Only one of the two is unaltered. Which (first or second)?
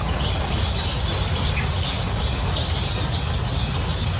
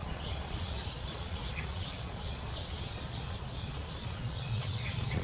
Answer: first